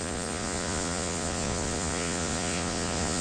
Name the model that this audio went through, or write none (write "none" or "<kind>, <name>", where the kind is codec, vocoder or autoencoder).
vocoder, Vocos